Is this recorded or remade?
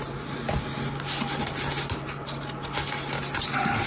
recorded